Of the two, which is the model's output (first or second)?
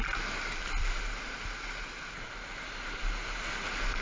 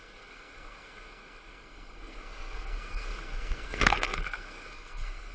second